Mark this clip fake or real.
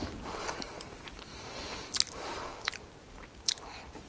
real